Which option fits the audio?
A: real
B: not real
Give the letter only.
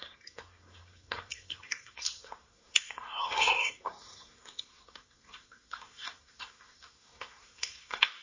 B